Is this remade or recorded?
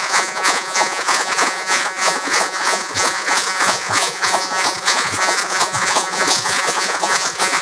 remade